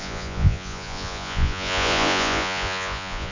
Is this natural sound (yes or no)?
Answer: no